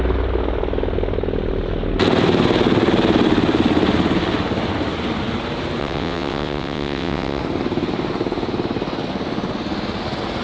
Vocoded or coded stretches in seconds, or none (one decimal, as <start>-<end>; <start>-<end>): 5.8-7.4